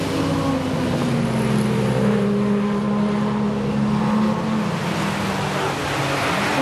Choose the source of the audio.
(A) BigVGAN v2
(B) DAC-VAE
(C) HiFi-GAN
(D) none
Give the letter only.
D